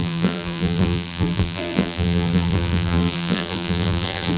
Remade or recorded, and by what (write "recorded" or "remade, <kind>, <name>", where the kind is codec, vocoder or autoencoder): remade, vocoder, BigVGAN v2